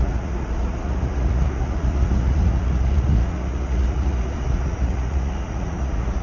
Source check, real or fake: fake